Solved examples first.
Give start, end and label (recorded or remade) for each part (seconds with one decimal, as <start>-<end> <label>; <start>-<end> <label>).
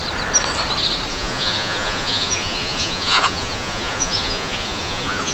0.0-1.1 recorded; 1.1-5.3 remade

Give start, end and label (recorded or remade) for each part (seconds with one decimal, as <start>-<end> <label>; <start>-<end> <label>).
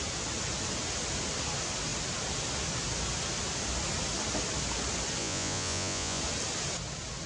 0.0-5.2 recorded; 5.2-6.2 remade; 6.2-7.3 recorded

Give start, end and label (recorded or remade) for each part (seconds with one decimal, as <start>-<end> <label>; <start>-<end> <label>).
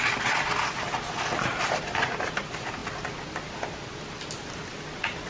0.0-5.3 recorded